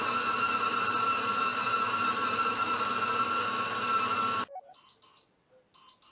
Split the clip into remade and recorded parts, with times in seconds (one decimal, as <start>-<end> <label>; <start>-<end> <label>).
0.0-6.1 recorded